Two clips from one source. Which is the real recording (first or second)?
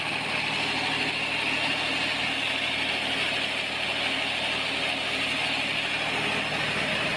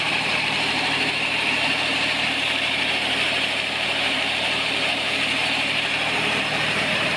first